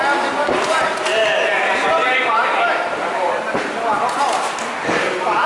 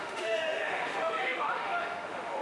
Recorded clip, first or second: first